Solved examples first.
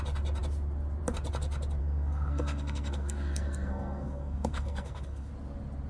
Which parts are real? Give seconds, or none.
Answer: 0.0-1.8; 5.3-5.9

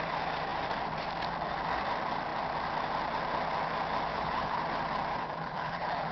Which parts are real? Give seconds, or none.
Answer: 0.0-4.1; 4.6-5.1

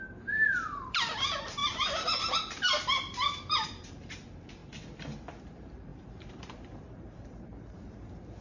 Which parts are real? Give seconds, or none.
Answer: 4.6-5.4

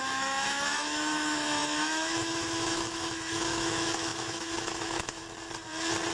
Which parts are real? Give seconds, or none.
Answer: 5.2-6.1

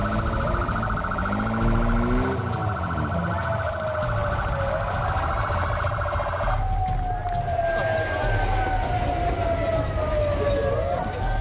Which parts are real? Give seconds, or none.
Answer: 0.0-11.4